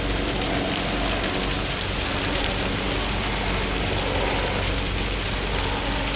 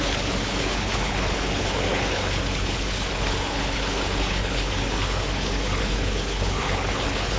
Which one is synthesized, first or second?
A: second